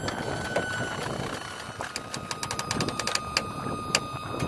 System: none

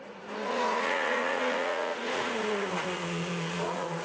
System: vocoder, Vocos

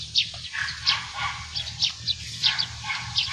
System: none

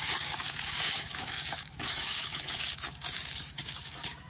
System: codec, DAC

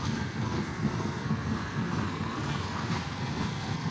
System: codec, SNAC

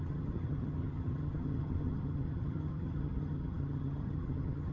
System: vocoder, HiFi-GAN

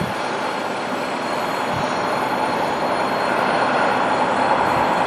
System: none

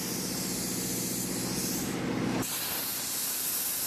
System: none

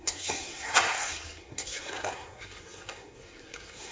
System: codec, SNAC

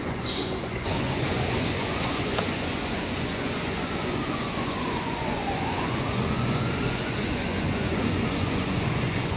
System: vocoder, Vocos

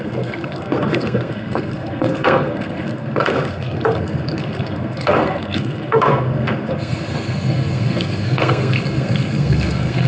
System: codec, SNAC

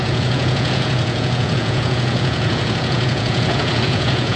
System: vocoder, Vocos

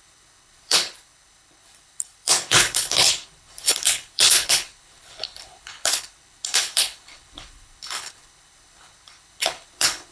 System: codec, HILCodec